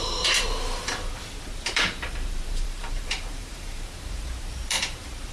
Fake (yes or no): yes